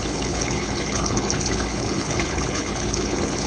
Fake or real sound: fake